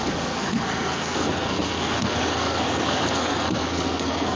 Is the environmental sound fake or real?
fake